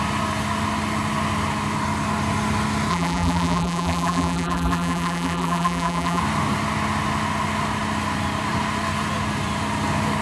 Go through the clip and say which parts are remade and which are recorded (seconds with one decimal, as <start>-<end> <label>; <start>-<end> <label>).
0.0-2.9 recorded; 2.9-6.2 remade; 6.2-10.2 recorded